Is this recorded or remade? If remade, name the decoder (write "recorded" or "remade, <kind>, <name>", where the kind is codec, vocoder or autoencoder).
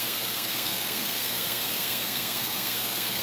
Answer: remade, codec, SNAC